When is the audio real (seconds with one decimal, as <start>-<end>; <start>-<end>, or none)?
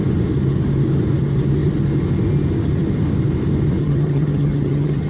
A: 0.0-3.8